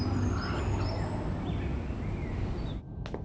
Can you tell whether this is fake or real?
real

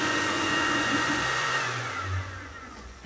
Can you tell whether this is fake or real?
fake